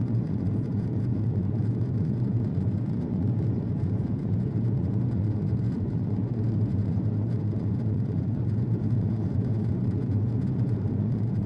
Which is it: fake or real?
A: fake